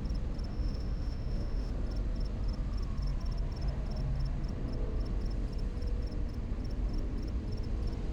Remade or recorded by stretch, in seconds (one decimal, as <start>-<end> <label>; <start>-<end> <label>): 0.0-0.5 recorded; 0.5-1.7 remade; 1.7-8.1 recorded